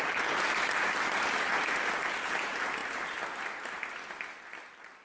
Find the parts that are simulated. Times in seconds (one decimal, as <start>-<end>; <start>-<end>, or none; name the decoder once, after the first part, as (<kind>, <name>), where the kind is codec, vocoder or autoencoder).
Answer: 2.8-3.4 (vocoder, BigVGAN v2)